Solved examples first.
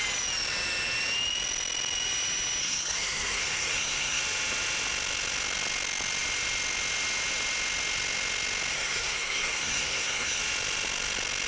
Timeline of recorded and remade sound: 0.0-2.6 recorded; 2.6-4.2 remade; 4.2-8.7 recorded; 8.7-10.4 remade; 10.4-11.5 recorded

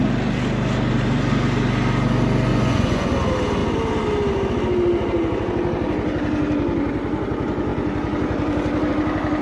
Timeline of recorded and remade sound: 0.0-2.5 recorded; 2.5-3.1 remade; 3.1-9.4 recorded

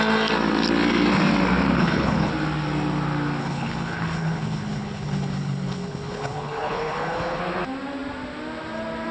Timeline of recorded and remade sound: 0.0-1.8 recorded; 1.8-2.3 remade; 2.3-3.4 recorded; 3.4-7.4 remade; 7.4-9.1 recorded

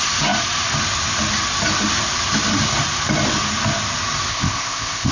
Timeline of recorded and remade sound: 0.0-4.3 recorded; 4.3-5.1 remade

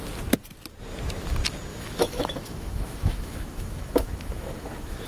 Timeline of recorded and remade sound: 0.0-1.7 recorded; 1.7-5.1 remade

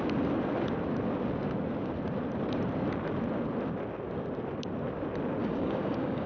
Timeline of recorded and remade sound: 0.0-5.4 recorded; 5.4-6.3 remade

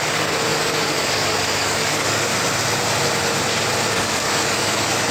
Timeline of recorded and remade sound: 0.0-2.3 remade; 2.3-3.9 recorded; 3.9-5.1 remade

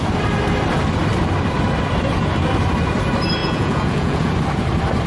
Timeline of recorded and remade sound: 0.0-3.4 recorded; 3.4-4.3 remade; 4.3-5.1 recorded